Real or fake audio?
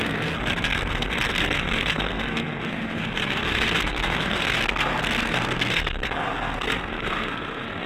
fake